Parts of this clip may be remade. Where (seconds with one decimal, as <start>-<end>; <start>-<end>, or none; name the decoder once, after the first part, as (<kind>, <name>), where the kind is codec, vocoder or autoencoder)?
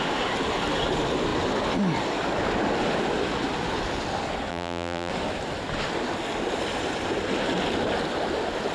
4.5-5.1 (vocoder, BigVGAN v2)